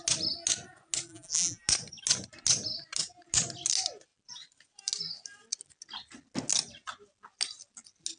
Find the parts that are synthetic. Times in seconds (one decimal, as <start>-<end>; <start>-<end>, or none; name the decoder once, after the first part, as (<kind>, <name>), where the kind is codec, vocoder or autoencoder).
1.1-1.7 (vocoder, BigVGAN v2)